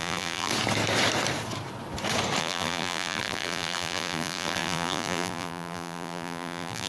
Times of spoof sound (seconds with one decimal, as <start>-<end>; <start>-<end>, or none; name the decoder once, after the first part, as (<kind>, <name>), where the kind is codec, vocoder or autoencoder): 0.0-0.5 (vocoder, BigVGAN v2); 2.4-6.9

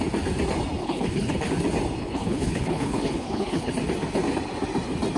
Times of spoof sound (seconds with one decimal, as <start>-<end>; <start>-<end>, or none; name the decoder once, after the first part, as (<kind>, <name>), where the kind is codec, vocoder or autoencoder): 0.8-1.5 (codec, HILCodec); 2.0-3.7

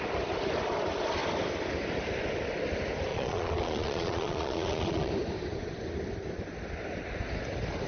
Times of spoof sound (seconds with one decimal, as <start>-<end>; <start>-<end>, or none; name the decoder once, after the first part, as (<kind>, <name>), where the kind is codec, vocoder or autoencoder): 3.1-5.1 (vocoder, Vocos)

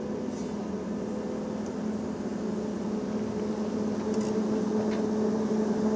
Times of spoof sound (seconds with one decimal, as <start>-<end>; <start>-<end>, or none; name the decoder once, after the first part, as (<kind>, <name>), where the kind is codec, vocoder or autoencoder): none